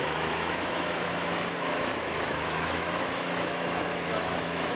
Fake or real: fake